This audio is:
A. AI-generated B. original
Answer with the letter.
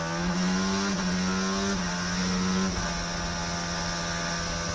B